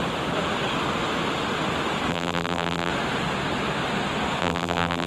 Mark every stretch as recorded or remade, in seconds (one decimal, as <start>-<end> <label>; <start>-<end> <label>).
0.0-2.1 recorded; 2.1-2.9 remade; 2.9-4.4 recorded; 4.4-5.1 remade